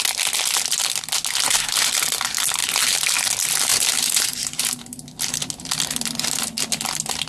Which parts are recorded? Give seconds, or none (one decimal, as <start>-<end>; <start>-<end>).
0.0-2.6; 3.3-3.7; 4.8-7.3